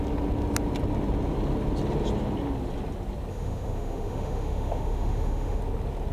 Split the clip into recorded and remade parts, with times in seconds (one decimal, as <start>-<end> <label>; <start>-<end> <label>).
0.0-3.3 recorded; 3.3-5.6 remade; 5.6-6.1 recorded